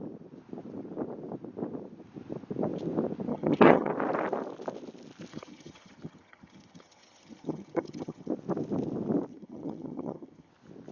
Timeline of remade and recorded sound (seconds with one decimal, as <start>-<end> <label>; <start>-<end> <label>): 0.0-3.3 recorded; 3.3-3.9 remade; 3.9-5.3 recorded; 5.3-8.3 remade; 8.3-9.3 recorded; 9.3-10.5 remade; 10.5-10.9 recorded